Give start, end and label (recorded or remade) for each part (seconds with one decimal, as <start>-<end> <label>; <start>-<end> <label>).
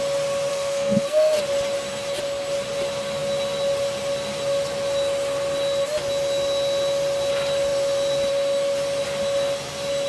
0.0-0.5 recorded; 0.5-1.4 remade; 1.4-10.1 recorded